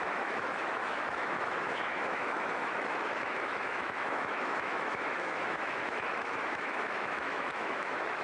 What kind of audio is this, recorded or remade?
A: remade